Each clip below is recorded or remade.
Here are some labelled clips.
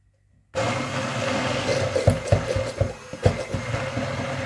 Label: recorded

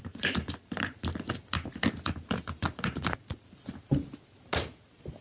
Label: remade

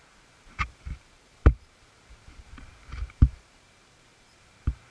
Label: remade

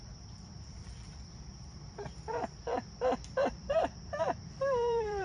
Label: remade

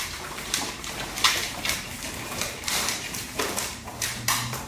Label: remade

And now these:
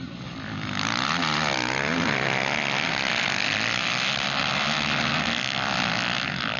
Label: recorded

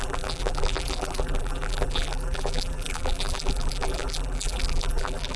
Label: remade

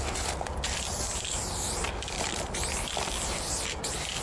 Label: recorded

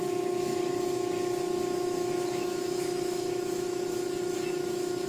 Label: remade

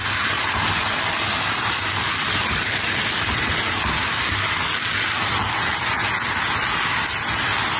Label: recorded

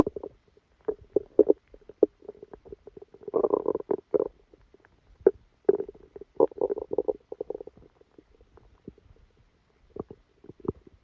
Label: recorded